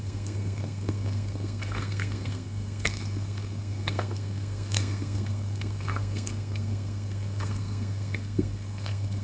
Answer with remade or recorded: remade